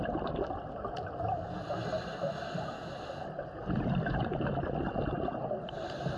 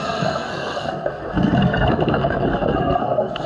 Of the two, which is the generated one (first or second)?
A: second